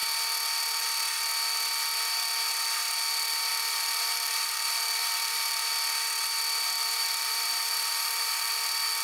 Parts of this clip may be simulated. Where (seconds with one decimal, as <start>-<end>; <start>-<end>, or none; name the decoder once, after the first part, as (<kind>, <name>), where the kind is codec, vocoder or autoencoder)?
3.5-5.7 (vocoder, BigVGAN v2); 6.8-8.5